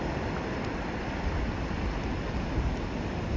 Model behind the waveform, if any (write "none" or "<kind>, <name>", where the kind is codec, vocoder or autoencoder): none